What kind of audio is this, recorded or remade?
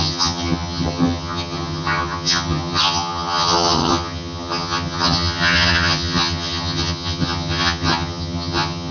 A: remade